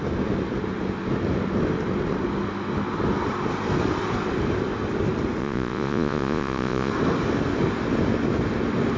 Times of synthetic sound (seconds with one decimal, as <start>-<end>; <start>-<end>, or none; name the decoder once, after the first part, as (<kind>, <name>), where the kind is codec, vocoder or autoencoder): 5.4-6.9 (vocoder, Vocos)